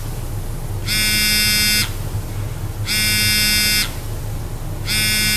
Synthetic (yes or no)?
no